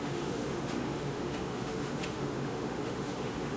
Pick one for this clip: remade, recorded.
remade